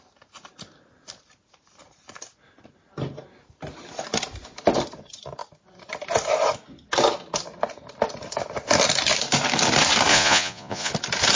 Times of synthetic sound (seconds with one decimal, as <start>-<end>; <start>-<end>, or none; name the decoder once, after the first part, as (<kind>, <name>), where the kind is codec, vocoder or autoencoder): 10.1-10.9 (vocoder, Vocos)